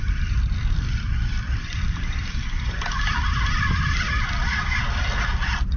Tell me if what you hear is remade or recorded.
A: recorded